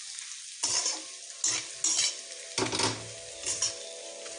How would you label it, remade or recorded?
recorded